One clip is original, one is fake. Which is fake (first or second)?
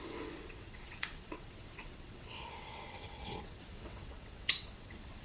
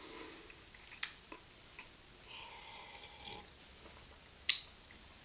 first